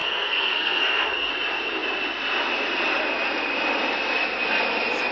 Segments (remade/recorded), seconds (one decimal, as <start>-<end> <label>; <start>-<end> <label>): 0.0-1.3 remade; 1.3-5.1 recorded